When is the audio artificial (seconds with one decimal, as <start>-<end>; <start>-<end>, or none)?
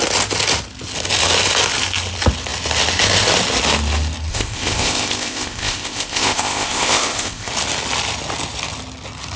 4.3-7.5